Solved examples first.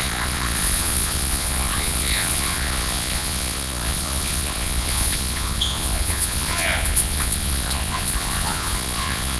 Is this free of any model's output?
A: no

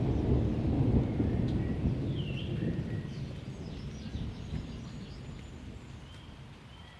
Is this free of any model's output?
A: yes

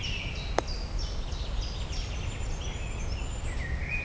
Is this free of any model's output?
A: yes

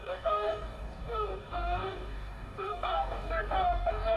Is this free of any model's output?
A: no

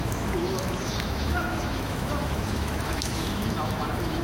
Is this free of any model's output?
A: no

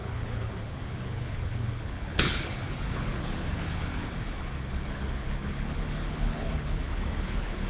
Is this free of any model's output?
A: no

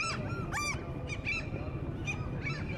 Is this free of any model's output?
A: yes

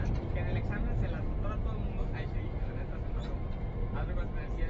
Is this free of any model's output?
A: yes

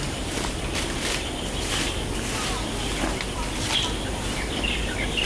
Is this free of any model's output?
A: yes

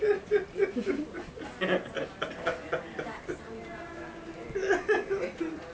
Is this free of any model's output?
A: yes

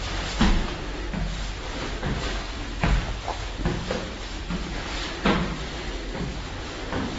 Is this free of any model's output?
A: yes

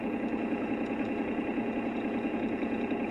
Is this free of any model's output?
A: no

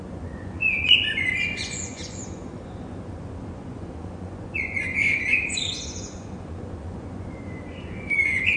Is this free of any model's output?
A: no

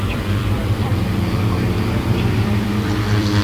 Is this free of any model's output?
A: no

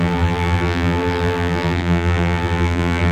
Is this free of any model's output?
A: no